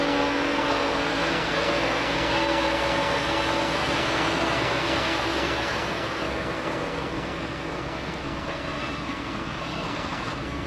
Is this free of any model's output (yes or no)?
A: no